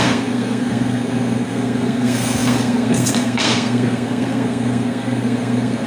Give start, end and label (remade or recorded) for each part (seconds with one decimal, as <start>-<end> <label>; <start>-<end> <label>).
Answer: 0.0-5.9 remade